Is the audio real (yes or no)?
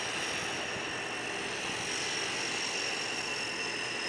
yes